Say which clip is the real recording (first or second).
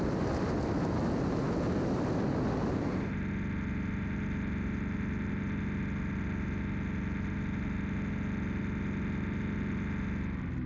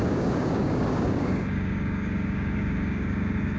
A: first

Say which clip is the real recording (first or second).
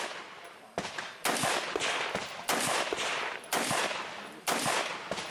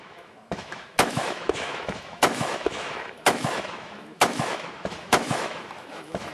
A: first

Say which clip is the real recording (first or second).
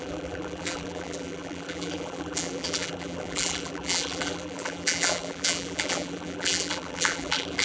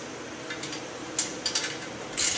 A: second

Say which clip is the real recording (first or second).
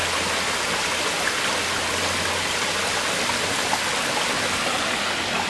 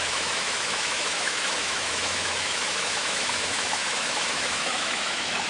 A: first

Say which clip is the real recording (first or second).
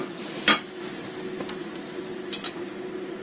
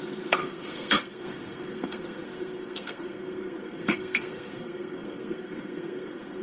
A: first